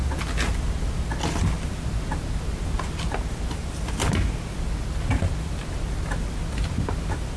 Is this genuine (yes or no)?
yes